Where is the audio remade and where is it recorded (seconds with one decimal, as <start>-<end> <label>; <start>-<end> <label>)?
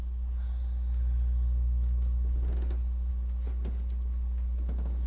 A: 0.0-5.1 recorded